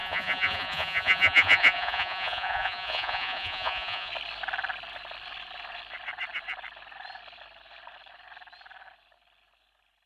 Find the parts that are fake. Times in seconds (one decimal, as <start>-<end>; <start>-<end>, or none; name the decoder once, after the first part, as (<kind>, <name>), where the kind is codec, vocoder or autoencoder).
0.0-4.1 (vocoder, Vocos)